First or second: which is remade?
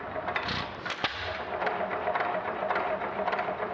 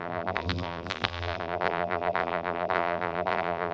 second